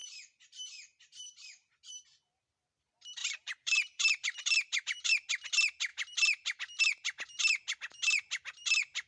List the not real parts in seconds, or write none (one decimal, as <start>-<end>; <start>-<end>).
0.0-1.9; 3.2-5.1

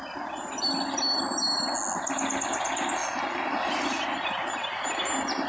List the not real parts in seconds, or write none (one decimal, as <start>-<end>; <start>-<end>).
none

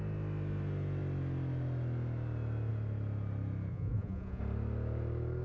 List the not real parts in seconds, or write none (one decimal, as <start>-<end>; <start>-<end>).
3.7-4.4

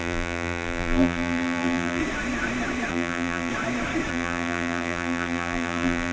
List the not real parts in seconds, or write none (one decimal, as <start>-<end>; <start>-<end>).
0.0-2.0; 2.9-3.5; 4.1-6.1